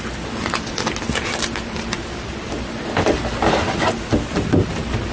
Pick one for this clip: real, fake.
real